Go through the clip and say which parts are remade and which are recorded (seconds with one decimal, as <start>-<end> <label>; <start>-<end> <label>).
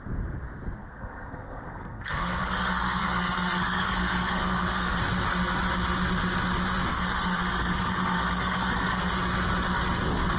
0.0-0.8 recorded; 0.8-5.0 remade; 5.0-6.9 recorded; 6.9-9.1 remade; 9.1-10.4 recorded